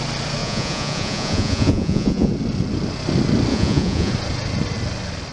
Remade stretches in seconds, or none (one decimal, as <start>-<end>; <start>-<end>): 0.4-2.3; 3.5-4.1